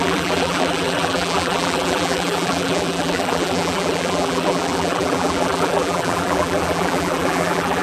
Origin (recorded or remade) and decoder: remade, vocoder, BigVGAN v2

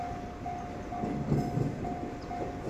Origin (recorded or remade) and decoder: recorded